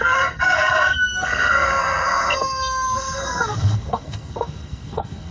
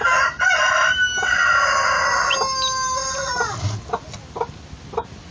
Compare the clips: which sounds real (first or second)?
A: second